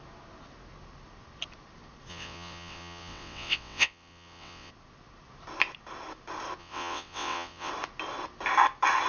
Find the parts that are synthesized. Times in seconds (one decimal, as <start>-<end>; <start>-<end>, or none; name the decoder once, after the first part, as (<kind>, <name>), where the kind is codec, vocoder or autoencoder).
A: 2.1-4.7 (vocoder, WaveNeXt); 6.6-7.7